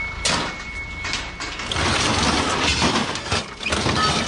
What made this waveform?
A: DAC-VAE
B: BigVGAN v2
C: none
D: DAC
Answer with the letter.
C